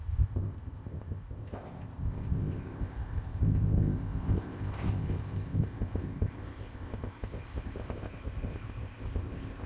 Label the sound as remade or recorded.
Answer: remade